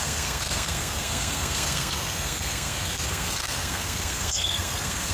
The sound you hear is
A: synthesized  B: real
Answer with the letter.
A